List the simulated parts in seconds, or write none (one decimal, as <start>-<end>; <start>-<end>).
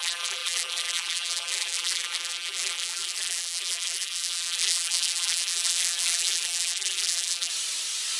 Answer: 0.0-7.5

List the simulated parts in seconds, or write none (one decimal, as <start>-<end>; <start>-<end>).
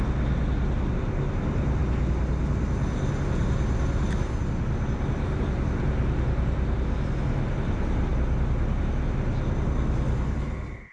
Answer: none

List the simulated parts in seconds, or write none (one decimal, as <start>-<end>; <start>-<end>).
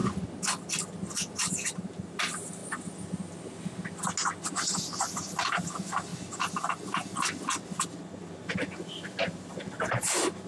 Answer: 1.4-2.6; 5.1-6.1; 8.4-8.8; 9.5-10.5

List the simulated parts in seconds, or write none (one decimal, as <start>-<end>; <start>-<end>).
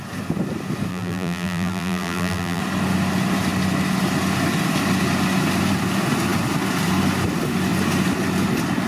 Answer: 0.9-2.6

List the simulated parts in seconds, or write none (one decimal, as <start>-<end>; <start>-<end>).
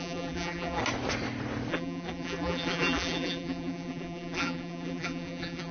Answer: 0.0-0.8; 1.7-5.7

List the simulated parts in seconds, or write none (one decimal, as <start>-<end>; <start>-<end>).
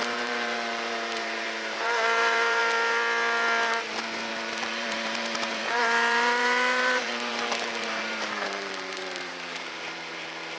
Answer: 0.0-2.6; 4.3-10.6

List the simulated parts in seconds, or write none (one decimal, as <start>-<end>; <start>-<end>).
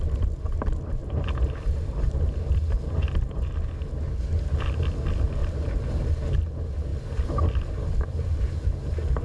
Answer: 1.0-2.2; 5.4-6.1